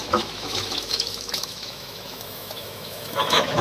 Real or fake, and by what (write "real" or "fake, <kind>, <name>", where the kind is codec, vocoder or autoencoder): fake, autoencoder, DAC-VAE